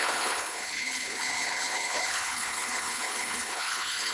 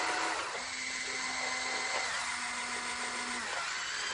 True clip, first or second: second